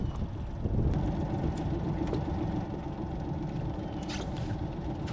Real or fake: real